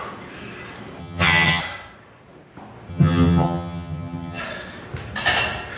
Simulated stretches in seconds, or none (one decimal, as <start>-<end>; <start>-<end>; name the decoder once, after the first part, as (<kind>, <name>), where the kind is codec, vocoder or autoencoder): 1.0-1.6 (vocoder, HiFi-GAN); 2.9-4.4